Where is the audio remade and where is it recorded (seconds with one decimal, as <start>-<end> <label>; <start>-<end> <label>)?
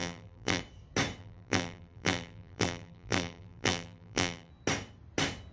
0.0-0.6 remade; 0.6-1.2 recorded; 1.2-4.5 remade; 4.5-5.5 recorded